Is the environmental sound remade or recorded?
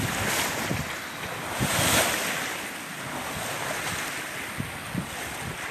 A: recorded